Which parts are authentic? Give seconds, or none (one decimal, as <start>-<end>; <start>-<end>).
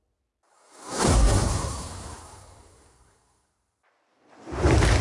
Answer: 0.0-0.5; 3.5-5.0